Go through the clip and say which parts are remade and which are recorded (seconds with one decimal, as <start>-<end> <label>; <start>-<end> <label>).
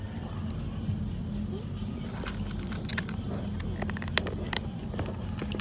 0.0-5.6 recorded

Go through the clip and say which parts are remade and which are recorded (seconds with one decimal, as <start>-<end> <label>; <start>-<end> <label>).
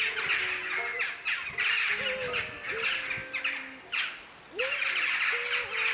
0.0-5.9 recorded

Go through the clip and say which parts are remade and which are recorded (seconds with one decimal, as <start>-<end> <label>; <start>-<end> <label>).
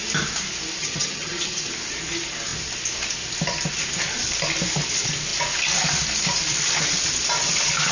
0.0-0.8 recorded; 0.8-1.7 remade; 1.7-7.9 recorded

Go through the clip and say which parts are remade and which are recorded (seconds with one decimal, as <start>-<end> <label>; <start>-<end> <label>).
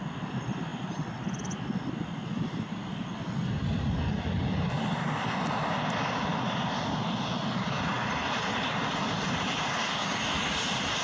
0.0-11.0 recorded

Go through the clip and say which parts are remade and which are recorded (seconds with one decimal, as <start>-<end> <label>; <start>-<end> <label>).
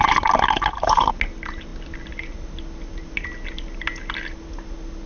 0.0-5.1 recorded